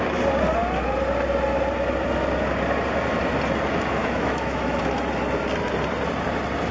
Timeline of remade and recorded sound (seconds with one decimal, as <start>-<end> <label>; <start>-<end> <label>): 0.0-4.0 recorded; 4.0-4.8 remade; 4.8-6.7 recorded